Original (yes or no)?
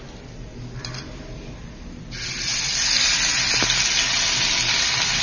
yes